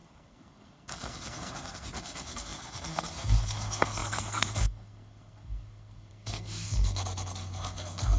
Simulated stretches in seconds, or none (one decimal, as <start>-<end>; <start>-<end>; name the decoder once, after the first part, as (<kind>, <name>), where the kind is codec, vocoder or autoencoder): 0.0-8.2 (codec, SNAC)